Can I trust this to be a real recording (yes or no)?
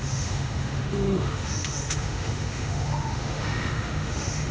no